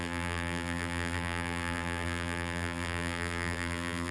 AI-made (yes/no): yes